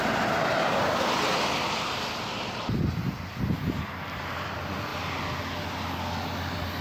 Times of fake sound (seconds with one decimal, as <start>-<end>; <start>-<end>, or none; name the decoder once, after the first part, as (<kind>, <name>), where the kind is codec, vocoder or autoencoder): none

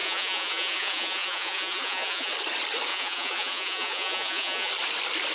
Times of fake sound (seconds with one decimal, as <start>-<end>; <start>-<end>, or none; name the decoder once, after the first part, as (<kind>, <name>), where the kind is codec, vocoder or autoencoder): 0.0-2.3 (vocoder, Vocos); 2.9-4.7

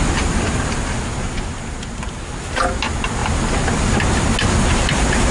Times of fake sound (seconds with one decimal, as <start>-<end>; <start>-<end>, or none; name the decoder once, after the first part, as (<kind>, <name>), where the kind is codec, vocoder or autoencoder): none

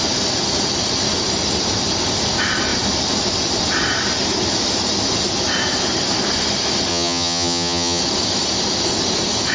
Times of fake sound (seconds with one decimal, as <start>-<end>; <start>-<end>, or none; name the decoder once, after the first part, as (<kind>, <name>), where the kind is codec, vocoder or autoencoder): 6.9-8.0 (vocoder, HiFi-GAN)

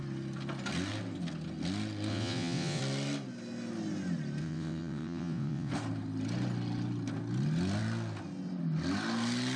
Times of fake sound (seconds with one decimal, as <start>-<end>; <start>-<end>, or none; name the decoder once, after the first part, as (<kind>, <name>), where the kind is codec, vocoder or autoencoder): 2.1-2.8 (vocoder, WaveNeXt); 4.4-5.7

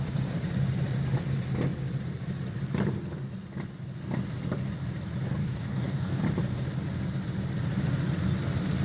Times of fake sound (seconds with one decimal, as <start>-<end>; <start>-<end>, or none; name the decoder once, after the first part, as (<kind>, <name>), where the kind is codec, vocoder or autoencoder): 5.4-6.2 (codec, DAC)